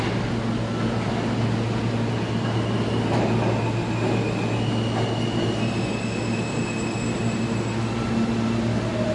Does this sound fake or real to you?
real